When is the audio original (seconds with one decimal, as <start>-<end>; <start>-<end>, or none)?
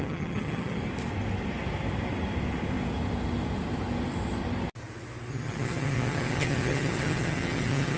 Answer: 0.8-5.3